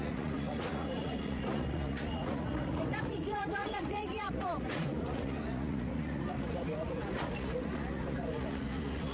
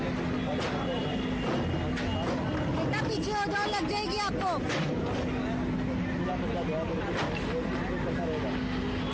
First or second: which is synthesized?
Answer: first